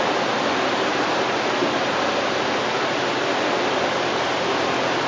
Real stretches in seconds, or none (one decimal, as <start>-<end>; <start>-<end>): 0.0-5.1